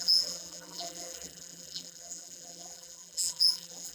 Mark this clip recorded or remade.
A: remade